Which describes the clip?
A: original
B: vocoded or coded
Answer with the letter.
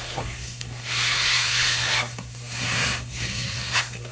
B